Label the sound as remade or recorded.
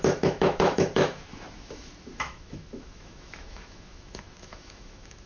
remade